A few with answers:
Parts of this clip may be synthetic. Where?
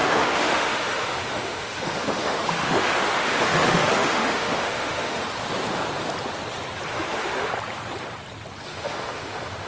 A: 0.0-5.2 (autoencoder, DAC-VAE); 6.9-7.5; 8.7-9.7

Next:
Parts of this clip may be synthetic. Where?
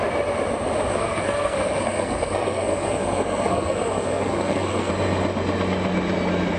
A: 0.9-4.9 (codec, SNAC)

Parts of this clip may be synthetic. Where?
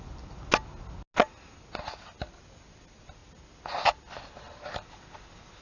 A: none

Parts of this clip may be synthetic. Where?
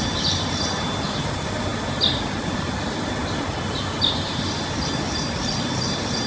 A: none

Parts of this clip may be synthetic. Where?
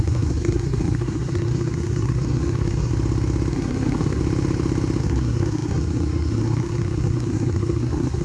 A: 0.0-2.9 (codec, SNAC); 3.5-4.2; 5.0-8.2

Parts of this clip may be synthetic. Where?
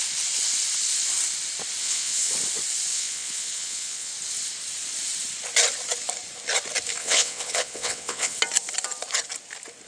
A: 1.8-2.3 (vocoder, WaveNeXt); 2.9-4.1; 7.0-8.4